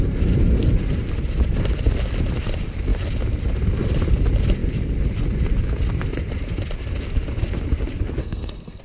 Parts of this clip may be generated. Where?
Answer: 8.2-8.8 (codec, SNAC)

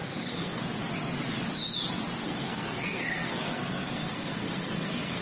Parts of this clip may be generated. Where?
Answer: 0.0-0.6 (codec, SNAC); 2.2-5.2

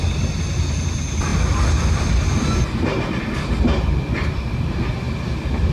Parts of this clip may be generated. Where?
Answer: none

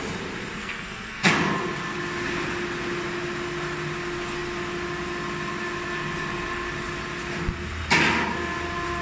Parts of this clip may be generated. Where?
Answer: 0.6-1.3 (codec, SNAC)

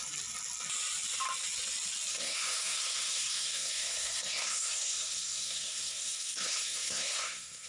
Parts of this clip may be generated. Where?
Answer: 2.1-7.7 (codec, SNAC)

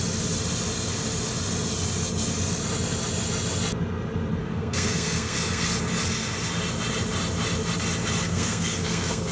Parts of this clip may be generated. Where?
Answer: 4.4-5.7 (codec, SNAC); 8.2-9.3